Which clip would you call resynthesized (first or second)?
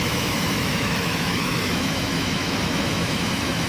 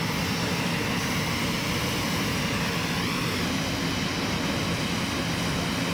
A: first